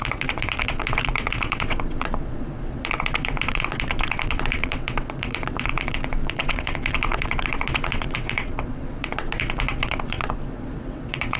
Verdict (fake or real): fake